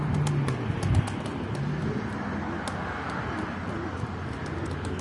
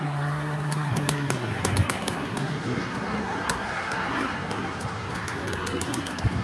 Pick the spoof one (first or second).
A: second